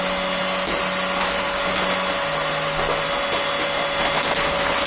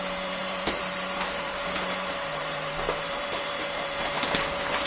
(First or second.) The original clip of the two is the first